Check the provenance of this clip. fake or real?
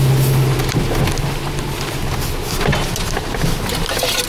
real